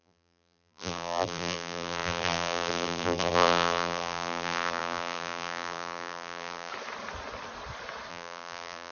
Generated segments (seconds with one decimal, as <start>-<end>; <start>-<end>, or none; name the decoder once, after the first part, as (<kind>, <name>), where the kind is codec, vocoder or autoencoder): 0.0-6.7 (vocoder, BigVGAN v2); 8.1-8.9